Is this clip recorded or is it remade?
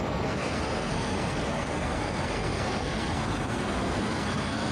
remade